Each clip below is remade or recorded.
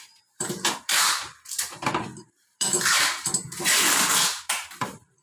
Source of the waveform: remade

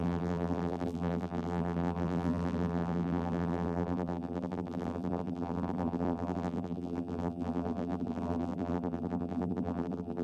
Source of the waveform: remade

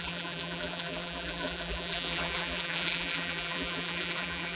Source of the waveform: remade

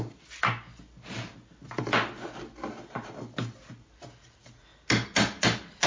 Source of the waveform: recorded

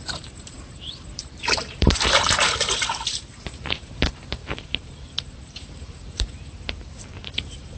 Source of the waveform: remade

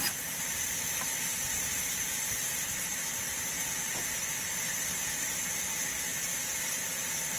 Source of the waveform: recorded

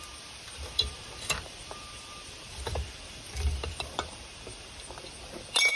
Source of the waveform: remade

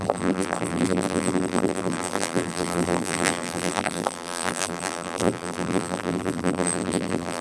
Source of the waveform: remade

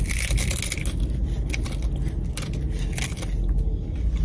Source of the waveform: recorded